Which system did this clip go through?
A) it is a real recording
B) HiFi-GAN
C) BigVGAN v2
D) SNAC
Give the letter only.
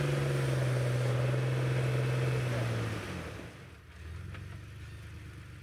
A